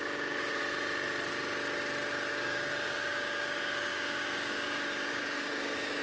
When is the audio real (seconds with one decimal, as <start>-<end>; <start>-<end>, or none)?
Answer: 0.6-2.3